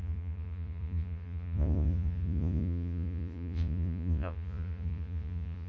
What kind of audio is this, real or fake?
fake